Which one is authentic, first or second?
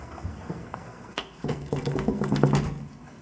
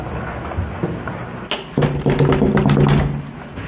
second